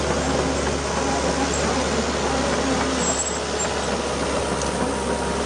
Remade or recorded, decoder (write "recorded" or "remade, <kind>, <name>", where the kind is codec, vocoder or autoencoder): recorded